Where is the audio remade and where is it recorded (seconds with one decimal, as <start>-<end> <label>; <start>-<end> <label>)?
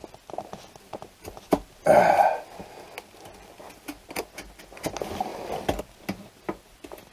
0.0-7.1 recorded